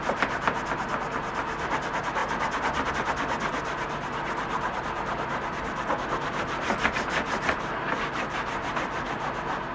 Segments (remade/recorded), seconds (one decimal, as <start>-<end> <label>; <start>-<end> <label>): 0.0-9.7 recorded